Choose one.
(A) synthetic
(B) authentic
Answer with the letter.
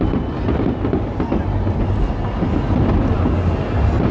B